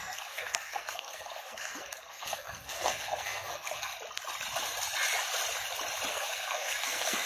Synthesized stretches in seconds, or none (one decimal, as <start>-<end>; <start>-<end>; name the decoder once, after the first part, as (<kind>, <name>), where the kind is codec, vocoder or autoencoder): 0.0-3.9 (codec, SNAC); 6.1-7.3